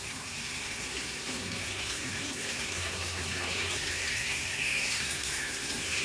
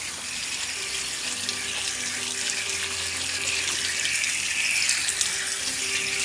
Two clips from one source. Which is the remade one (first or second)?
first